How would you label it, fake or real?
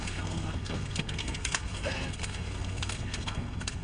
fake